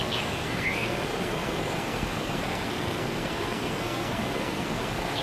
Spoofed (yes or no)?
yes